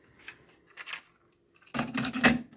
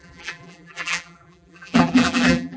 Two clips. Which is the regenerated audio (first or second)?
second